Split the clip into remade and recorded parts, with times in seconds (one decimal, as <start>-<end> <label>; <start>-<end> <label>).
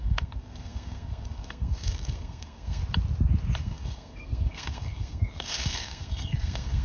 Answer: 0.0-2.8 remade; 2.8-3.6 recorded; 3.6-6.8 remade